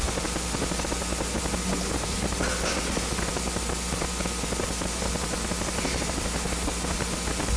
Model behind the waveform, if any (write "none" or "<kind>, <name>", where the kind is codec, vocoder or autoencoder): none